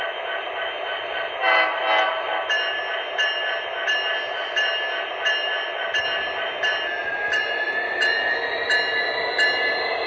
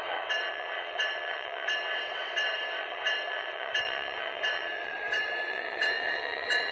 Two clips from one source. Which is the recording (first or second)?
first